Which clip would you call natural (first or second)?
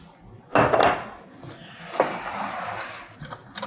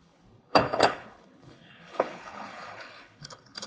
first